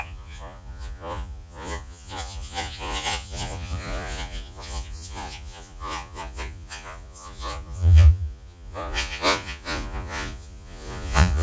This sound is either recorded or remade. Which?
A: remade